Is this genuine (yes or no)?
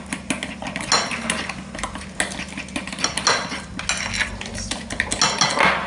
yes